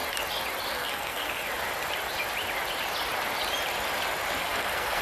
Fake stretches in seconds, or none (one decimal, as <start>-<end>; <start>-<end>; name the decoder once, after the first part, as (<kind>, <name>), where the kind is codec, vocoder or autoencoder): 0.7-1.4 (codec, SNAC); 4.4-5.0

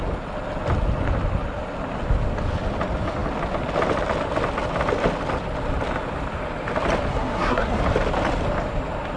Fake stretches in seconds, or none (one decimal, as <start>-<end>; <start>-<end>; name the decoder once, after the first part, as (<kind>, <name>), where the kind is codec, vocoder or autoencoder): 7.1-7.8 (codec, SNAC)

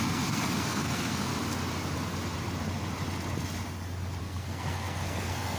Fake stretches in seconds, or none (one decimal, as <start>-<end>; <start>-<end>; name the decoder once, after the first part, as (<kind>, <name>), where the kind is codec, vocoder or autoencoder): 0.0-1.3 (codec, SNAC); 4.2-5.6